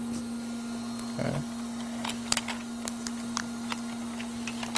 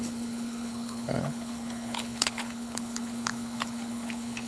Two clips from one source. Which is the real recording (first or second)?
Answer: first